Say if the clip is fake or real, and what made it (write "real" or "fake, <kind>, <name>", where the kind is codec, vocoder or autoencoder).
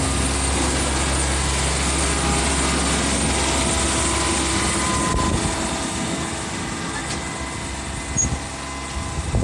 real